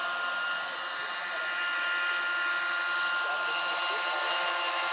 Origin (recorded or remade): recorded